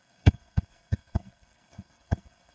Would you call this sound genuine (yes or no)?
no